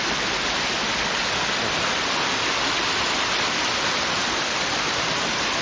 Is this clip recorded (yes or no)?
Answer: yes